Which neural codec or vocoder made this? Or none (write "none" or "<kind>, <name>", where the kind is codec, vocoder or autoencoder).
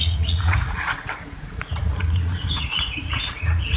vocoder, Vocos